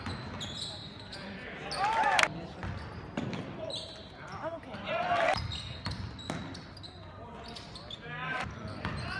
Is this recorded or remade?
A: recorded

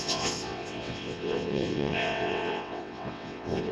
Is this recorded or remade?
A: remade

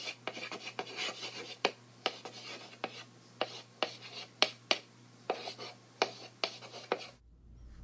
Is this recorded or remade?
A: recorded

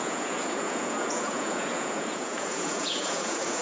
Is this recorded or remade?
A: remade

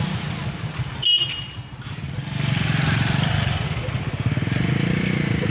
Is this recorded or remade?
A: recorded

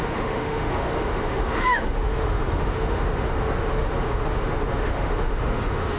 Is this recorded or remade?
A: remade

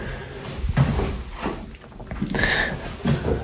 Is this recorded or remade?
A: recorded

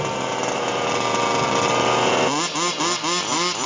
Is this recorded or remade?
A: recorded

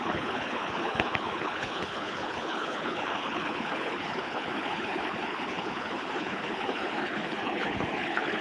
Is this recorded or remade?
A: remade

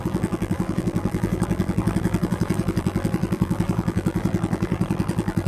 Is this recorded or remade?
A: remade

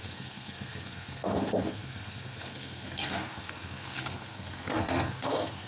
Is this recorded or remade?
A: remade